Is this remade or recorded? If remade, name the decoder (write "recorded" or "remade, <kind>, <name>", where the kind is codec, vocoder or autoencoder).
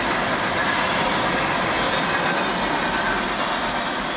recorded